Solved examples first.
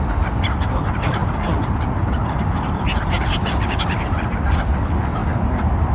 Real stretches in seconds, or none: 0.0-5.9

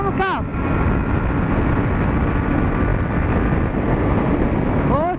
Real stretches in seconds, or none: 0.0-5.2

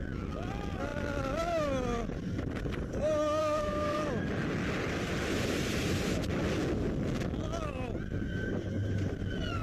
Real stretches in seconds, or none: 0.0-3.4; 4.1-9.6

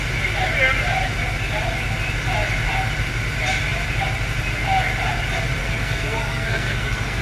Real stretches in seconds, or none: 0.0-5.6

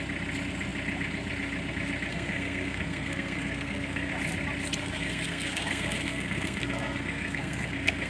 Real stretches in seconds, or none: 0.0-2.1; 4.1-4.8

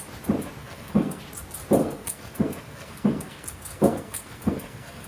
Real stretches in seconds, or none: 0.0-0.6; 1.2-1.8

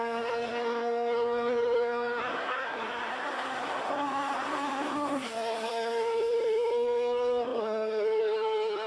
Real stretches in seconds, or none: none